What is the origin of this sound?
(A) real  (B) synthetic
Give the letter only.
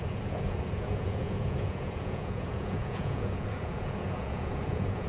B